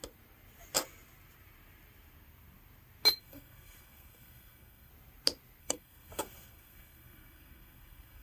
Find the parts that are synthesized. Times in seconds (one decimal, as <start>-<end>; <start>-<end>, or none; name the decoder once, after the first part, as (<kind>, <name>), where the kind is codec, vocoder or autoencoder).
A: 3.2-4.9 (codec, SNAC); 5.6-8.2